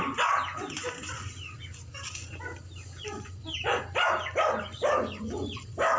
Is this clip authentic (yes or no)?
yes